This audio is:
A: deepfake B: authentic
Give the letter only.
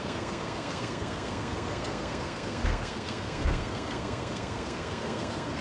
A